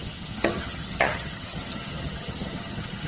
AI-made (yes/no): yes